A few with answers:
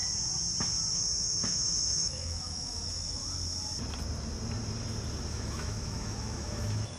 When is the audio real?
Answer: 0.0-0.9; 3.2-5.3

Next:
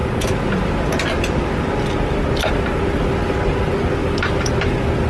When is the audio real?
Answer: 0.0-5.1

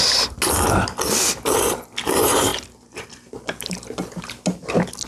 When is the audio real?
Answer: 0.0-5.1

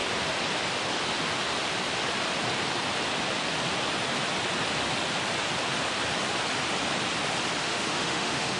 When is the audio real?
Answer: 0.0-7.6

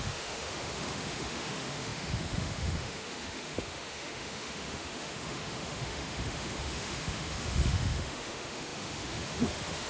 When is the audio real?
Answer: none

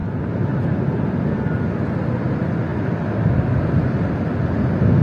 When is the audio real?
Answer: 0.0-5.0